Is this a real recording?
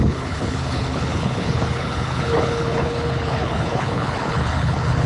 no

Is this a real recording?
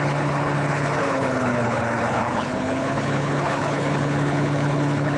no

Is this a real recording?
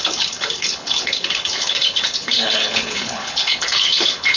no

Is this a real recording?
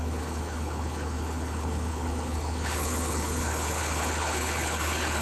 no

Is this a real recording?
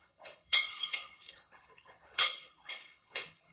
no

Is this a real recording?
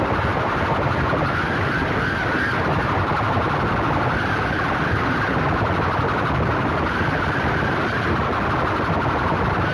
yes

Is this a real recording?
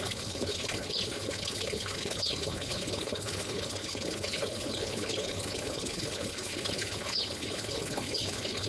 no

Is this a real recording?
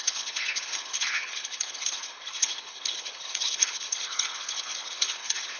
no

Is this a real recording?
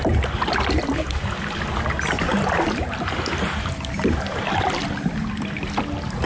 yes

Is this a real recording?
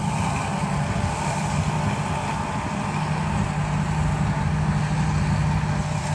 yes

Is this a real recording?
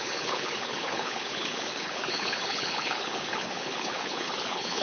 no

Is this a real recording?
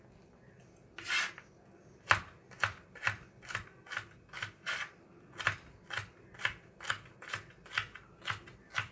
yes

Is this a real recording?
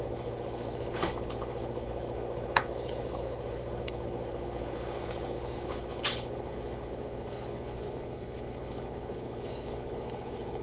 no